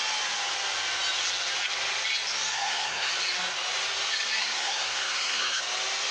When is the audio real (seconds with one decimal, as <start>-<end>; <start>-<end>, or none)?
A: 0.0-2.5; 3.1-4.4; 5.6-6.1